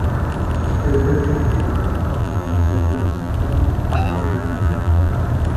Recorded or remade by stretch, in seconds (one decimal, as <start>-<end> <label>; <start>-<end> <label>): 0.0-2.2 recorded; 2.2-3.3 remade; 3.3-4.0 recorded; 4.0-5.1 remade; 5.1-5.6 recorded